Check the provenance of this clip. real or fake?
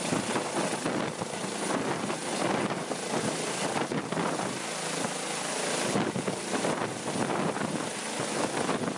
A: real